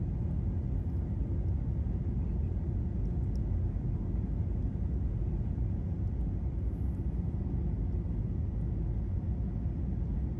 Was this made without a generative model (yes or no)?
yes